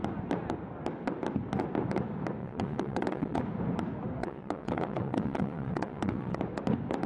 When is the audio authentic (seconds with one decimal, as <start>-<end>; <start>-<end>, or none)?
0.0-2.4; 3.4-4.2; 6.4-7.1